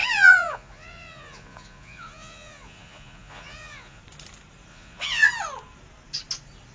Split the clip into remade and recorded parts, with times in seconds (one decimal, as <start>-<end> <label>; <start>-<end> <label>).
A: 0.0-4.0 remade; 4.0-4.7 recorded; 4.7-5.3 remade; 5.3-6.7 recorded